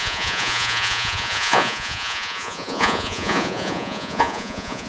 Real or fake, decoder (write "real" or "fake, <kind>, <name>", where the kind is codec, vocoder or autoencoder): fake, vocoder, Vocos